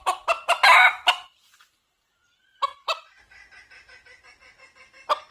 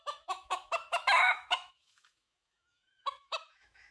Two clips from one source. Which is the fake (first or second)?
second